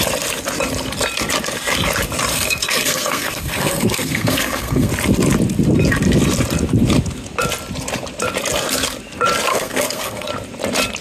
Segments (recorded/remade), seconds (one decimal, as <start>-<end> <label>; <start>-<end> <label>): 0.0-2.3 recorded; 2.3-4.9 remade; 4.9-9.5 recorded; 9.5-10.3 remade; 10.3-11.0 recorded